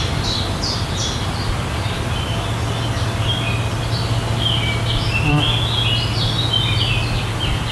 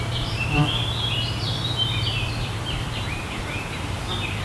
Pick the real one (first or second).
first